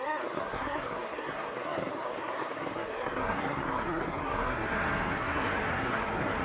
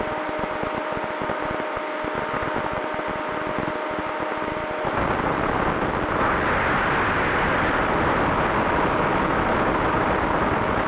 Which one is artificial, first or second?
first